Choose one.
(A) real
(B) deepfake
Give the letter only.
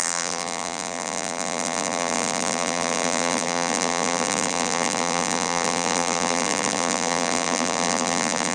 B